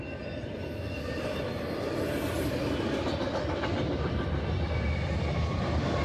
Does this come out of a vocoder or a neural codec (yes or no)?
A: yes